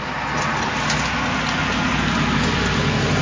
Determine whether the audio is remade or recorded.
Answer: recorded